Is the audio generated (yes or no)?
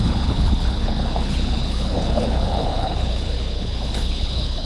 yes